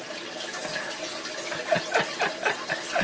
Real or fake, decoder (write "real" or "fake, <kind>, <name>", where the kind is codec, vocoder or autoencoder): real